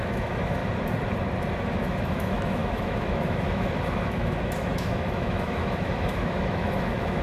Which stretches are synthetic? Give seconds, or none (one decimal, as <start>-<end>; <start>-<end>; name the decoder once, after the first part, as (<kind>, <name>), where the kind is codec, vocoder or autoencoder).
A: 0.0-0.6 (autoencoder, DAC-VAE); 1.5-7.2